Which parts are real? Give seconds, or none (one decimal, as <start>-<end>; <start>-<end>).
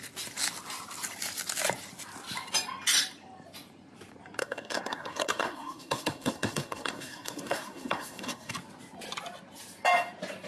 0.0-4.4; 8.5-10.5